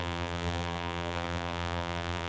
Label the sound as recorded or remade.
remade